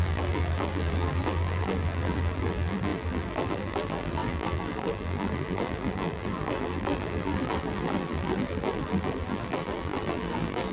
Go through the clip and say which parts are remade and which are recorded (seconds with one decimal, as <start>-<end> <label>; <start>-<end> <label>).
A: 0.0-10.7 remade